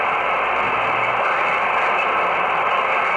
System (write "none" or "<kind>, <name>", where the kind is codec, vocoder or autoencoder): none